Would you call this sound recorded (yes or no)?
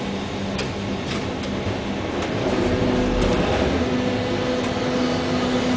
yes